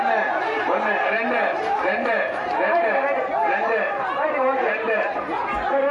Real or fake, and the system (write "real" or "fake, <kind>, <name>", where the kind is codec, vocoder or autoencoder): real